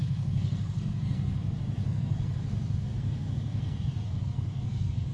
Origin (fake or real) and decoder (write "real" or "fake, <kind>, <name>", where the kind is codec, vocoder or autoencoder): fake, codec, SNAC